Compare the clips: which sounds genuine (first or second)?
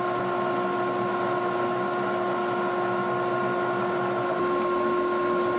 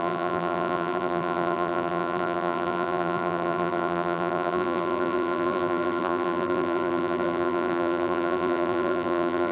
first